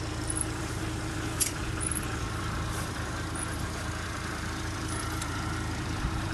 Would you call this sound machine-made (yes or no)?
yes